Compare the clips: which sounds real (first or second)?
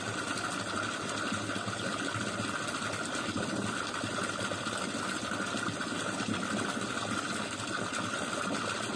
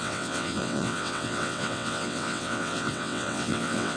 first